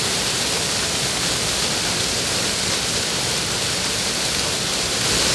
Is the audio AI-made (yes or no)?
no